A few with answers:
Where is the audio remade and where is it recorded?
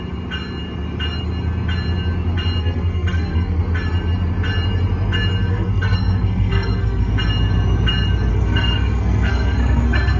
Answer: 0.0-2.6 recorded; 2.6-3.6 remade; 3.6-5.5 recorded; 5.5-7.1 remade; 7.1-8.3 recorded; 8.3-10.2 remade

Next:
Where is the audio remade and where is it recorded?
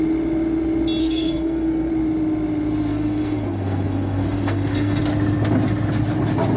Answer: 0.0-1.0 recorded; 1.0-1.9 remade; 1.9-2.9 recorded; 2.9-5.0 remade; 5.0-6.6 recorded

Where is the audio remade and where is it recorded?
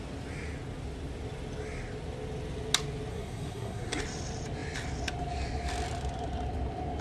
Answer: 0.0-3.1 recorded; 3.1-4.0 remade; 4.0-7.0 recorded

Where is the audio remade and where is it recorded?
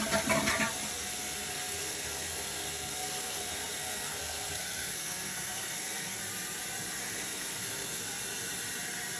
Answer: 0.0-1.1 recorded; 1.1-6.2 remade; 6.2-7.0 recorded; 7.0-8.0 remade; 8.0-9.2 recorded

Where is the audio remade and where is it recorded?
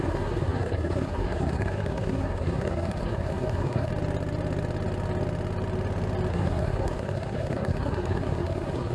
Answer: 0.0-3.9 remade; 3.9-6.3 recorded; 6.3-8.9 remade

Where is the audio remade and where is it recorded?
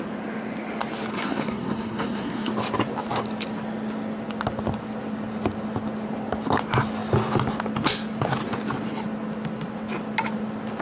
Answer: 0.0-1.1 recorded; 1.1-2.5 remade; 2.5-10.8 recorded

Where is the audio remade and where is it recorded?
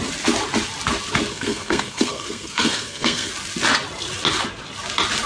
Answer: 0.0-1.3 recorded; 1.3-3.3 remade; 3.3-5.3 recorded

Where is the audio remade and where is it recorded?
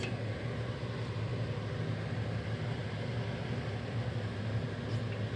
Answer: 0.0-5.4 recorded